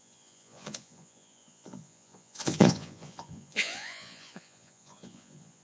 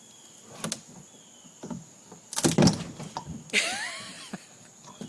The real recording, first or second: second